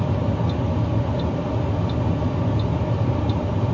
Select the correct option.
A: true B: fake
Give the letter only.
A